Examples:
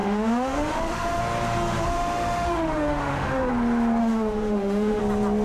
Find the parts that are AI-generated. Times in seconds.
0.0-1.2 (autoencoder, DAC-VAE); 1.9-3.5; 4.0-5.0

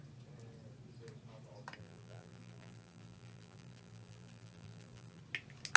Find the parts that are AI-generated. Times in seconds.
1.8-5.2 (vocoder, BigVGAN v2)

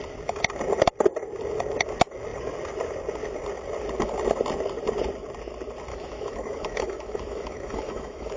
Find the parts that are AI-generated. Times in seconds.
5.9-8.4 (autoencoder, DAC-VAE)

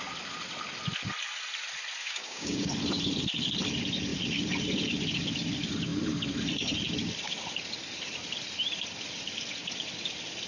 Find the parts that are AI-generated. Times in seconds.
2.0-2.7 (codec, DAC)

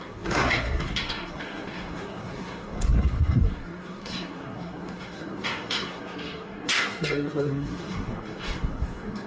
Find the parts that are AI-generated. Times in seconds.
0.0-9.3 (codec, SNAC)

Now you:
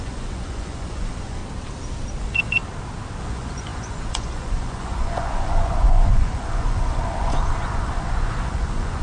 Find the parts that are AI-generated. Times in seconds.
0.0-1.4 (vocoder, Vocos); 2.2-2.6; 3.2-9.0

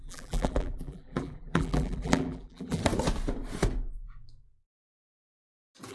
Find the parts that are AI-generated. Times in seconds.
0.0-2.8 (vocoder, BigVGAN v2)